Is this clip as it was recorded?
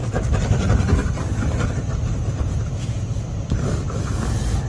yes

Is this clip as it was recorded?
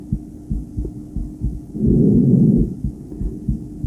yes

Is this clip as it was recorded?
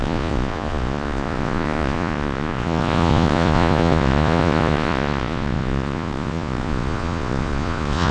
no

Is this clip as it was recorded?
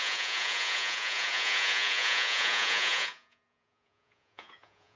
no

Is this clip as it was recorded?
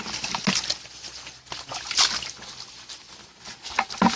yes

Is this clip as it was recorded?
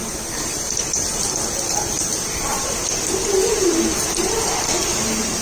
yes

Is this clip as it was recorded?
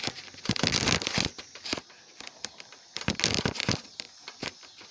yes